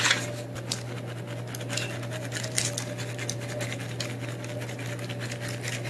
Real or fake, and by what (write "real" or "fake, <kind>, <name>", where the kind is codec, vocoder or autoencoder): real